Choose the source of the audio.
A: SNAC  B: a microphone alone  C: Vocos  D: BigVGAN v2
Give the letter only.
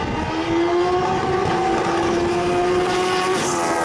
B